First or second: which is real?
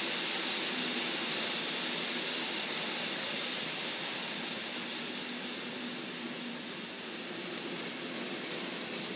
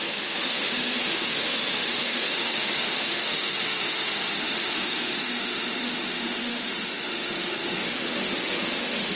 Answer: first